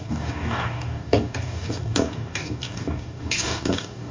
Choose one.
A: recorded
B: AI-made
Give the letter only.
B